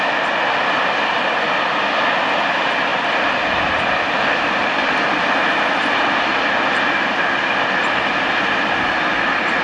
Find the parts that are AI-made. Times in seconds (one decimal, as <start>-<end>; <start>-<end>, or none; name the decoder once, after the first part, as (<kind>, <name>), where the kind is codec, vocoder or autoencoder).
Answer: none